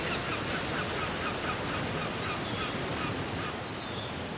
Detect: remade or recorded recorded